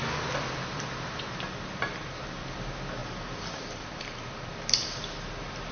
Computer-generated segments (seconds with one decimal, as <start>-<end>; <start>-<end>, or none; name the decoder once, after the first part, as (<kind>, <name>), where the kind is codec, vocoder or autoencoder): 3.0-4.0 (vocoder, BigVGAN v2)